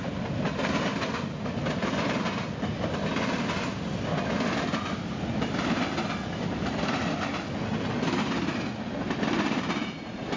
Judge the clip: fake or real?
real